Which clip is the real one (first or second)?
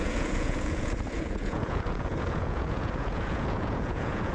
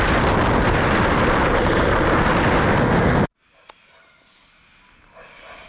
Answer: second